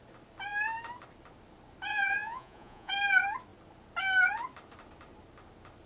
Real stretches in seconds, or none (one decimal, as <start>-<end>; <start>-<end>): 0.0-1.9; 2.9-5.9